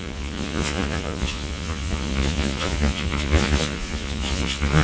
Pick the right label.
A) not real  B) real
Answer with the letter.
A